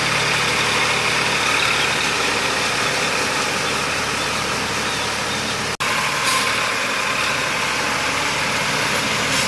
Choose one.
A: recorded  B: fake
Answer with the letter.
A